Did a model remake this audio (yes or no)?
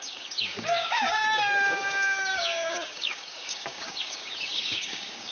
yes